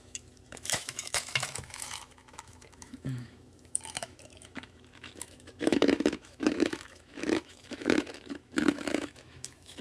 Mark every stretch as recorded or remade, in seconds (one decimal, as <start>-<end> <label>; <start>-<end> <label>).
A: 0.0-9.8 remade